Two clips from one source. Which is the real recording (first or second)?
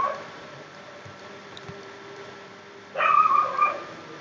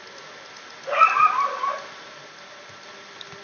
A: second